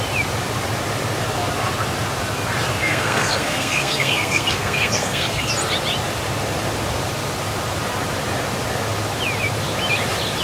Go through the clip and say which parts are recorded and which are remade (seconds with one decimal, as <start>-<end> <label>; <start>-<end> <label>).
0.0-2.8 recorded; 2.8-5.5 remade; 5.5-10.4 recorded